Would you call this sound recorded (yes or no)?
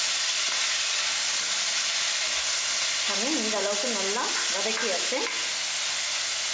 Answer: yes